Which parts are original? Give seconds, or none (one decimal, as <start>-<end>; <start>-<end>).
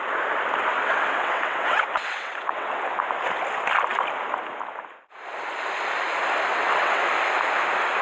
0.0-0.7; 3.0-6.5; 7.0-8.0